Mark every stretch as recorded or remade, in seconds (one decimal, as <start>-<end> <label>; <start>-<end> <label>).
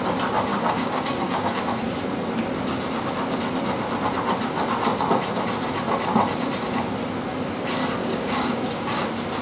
0.0-0.5 recorded; 0.5-1.6 remade; 1.6-8.0 recorded; 8.0-9.0 remade; 9.0-9.4 recorded